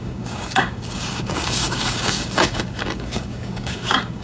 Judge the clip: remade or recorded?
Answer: remade